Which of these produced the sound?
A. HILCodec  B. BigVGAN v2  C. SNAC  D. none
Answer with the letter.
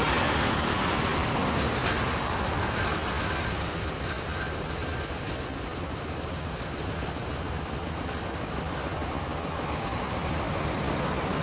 D